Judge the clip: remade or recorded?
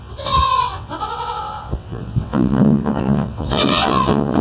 remade